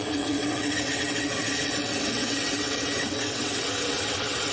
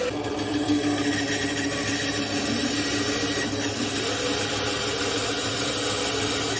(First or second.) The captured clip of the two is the second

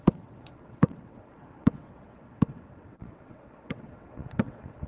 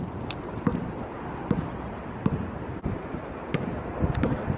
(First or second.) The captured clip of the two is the second